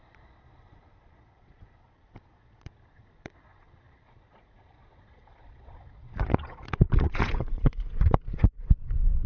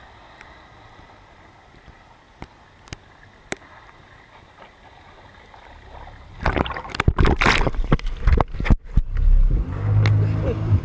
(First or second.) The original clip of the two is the second